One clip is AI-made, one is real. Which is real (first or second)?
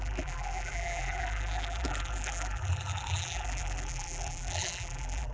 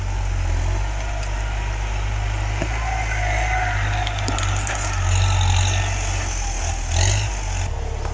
second